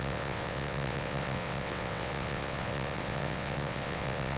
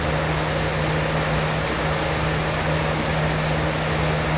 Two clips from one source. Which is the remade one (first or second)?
first